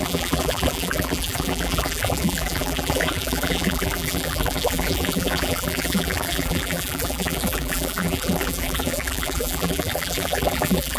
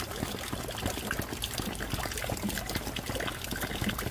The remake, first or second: first